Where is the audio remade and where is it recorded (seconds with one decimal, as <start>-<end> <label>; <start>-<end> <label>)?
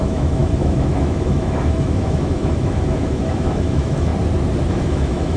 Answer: 0.0-4.1 remade; 4.1-4.7 recorded; 4.7-5.4 remade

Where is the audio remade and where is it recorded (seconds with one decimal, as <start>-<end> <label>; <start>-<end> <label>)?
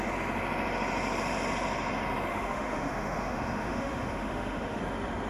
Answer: 0.0-2.3 recorded; 2.3-4.8 remade; 4.8-5.3 recorded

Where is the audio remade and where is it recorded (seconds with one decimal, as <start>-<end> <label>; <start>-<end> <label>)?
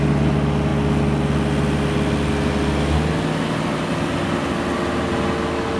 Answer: 0.0-5.8 recorded